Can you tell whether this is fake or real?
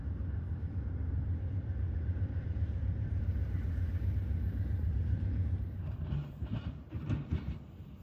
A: fake